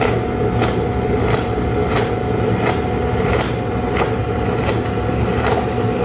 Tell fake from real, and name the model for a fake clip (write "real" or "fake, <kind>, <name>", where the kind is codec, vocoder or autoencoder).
real